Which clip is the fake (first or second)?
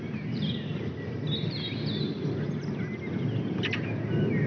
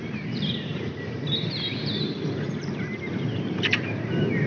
second